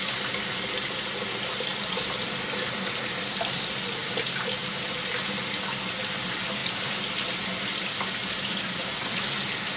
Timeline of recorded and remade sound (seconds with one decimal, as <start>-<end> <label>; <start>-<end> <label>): 0.0-1.7 recorded; 1.7-2.3 remade; 2.3-4.6 recorded; 4.6-5.4 remade; 5.4-9.8 recorded